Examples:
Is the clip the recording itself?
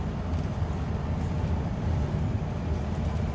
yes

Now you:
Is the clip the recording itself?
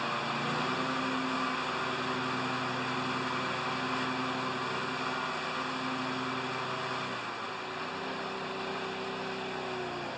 yes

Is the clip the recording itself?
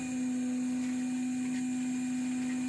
yes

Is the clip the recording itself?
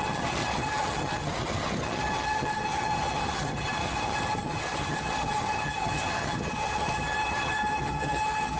no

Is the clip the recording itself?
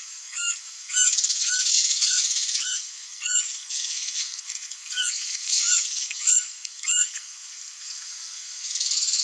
no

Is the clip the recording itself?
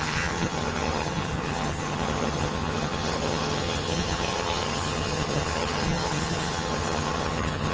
no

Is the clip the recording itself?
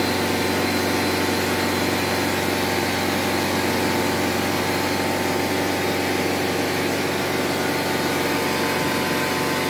yes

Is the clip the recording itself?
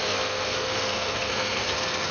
no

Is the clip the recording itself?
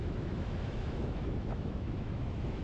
no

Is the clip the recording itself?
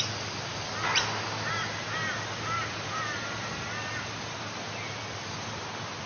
yes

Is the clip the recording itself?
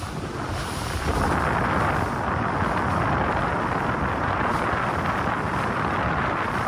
yes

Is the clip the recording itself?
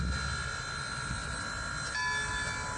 yes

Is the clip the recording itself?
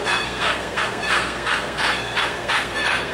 no